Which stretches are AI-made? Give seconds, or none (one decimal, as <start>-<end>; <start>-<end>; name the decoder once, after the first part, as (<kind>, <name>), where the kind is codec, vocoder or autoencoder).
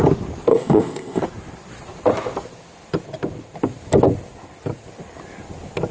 0.5-1.2 (codec, ZipCodec)